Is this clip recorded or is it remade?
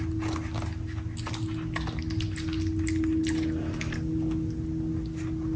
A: recorded